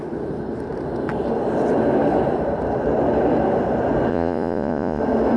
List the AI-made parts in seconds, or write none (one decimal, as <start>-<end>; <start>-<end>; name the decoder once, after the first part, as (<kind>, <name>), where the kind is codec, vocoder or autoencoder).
4.1-5.0 (vocoder, Vocos)